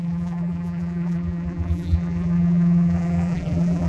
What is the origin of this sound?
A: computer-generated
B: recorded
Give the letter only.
A